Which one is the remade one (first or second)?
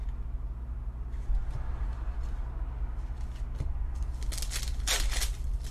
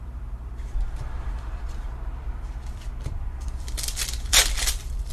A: second